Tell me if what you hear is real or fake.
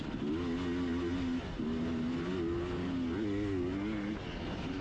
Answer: real